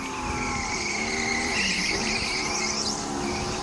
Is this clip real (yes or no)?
yes